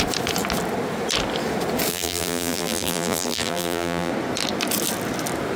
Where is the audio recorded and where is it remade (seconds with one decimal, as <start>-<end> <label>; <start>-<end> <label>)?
0.0-1.9 recorded; 1.9-4.1 remade; 4.1-5.6 recorded